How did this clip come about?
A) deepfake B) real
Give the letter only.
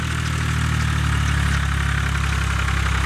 B